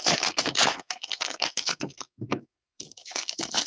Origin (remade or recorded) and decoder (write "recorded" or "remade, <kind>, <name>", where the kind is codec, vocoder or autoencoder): remade, codec, SNAC